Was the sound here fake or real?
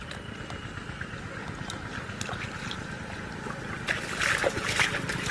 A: real